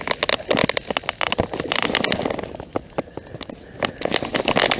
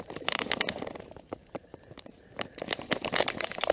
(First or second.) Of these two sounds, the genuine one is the first